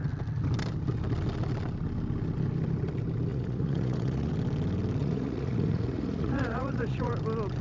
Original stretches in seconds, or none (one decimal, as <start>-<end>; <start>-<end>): 0.0-3.3; 4.3-5.0; 7.1-7.6